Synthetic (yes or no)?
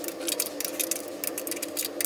no